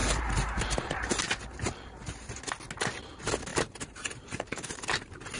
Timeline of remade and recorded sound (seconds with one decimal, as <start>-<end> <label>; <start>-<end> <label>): 0.0-1.2 remade; 1.2-3.5 recorded; 3.5-4.8 remade; 4.8-5.4 recorded